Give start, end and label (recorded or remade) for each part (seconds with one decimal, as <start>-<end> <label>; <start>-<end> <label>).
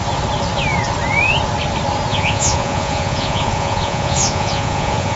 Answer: 0.0-2.1 recorded; 2.1-5.2 remade